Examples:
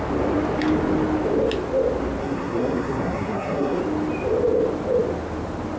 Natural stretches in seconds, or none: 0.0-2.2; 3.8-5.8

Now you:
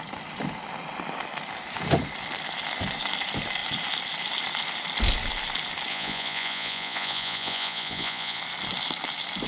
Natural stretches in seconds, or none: 0.0-5.9; 8.4-9.5

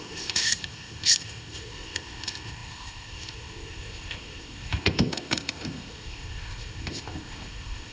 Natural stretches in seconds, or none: none

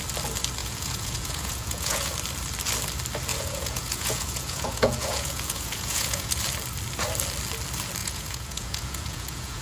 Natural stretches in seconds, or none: 0.0-0.6; 2.1-3.3; 6.4-8.0

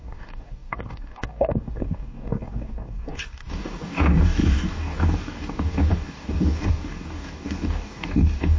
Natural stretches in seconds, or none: none

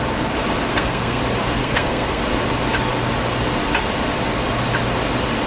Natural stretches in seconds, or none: 0.0-0.7; 1.2-1.6; 2.2-5.5

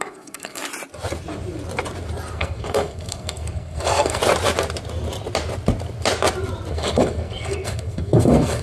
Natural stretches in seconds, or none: 0.6-2.3; 4.2-6.7

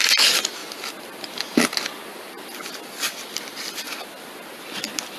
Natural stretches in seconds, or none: 0.0-5.2